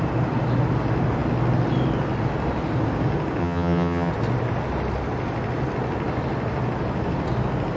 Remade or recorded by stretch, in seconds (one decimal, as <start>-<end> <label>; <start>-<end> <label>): 0.0-3.4 recorded; 3.4-4.1 remade; 4.1-7.8 recorded